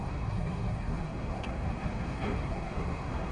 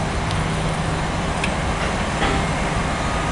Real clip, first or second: second